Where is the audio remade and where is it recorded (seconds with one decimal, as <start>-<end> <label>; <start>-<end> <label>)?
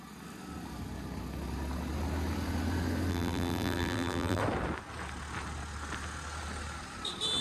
0.0-3.1 recorded; 3.1-4.4 remade; 4.4-7.4 recorded